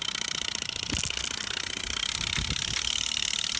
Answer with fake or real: real